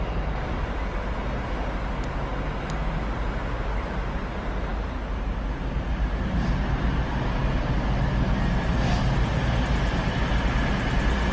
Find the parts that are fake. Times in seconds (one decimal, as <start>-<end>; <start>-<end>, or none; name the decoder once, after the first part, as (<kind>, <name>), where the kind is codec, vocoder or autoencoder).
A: none